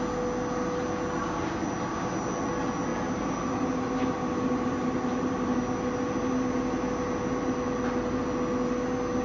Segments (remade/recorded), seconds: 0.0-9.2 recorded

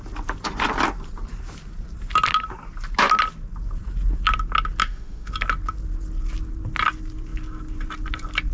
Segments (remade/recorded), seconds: 0.0-4.8 recorded; 4.8-5.3 remade; 5.3-8.5 recorded

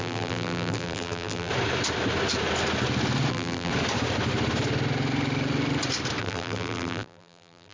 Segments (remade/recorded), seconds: 0.0-1.5 remade; 1.5-3.3 recorded; 3.3-3.7 remade; 3.7-6.2 recorded; 6.2-7.7 remade

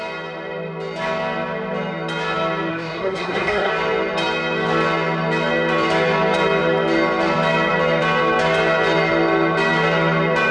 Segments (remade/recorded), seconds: 0.0-2.7 recorded; 2.7-3.7 remade; 3.7-10.5 recorded

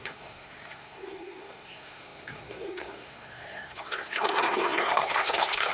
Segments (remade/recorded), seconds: 0.0-5.7 remade

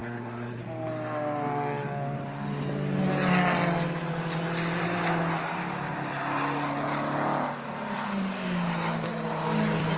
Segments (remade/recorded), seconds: 0.0-0.6 remade; 0.6-10.0 recorded

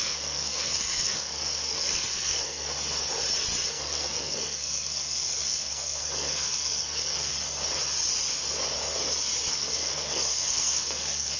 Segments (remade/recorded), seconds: 0.0-2.7 remade; 2.7-3.7 recorded; 3.7-7.3 remade; 7.3-9.5 recorded; 9.5-11.4 remade

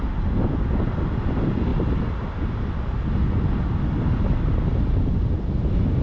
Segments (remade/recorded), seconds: 0.0-6.0 recorded